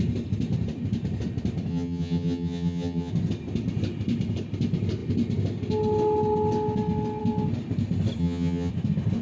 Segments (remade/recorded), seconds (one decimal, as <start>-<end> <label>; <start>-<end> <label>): 0.0-1.7 recorded; 1.7-3.1 remade; 3.1-8.2 recorded; 8.2-8.7 remade; 8.7-9.2 recorded